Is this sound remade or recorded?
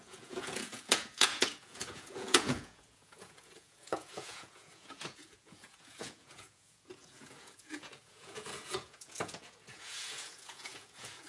remade